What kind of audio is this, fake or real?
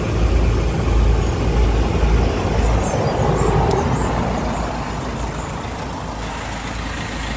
real